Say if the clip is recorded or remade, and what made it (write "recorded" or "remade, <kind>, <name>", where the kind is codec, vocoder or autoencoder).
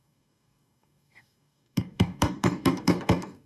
remade, codec, DAC